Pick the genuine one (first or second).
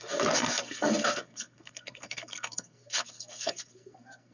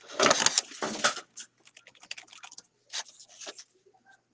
second